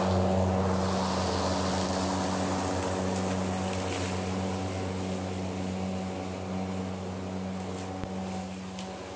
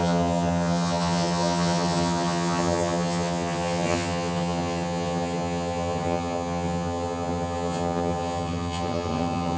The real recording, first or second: first